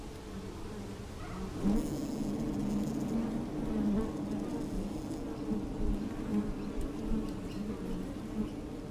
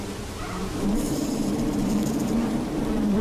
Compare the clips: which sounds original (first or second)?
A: first